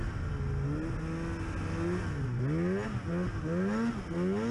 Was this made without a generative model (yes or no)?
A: yes